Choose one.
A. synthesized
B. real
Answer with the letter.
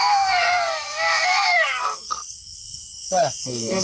A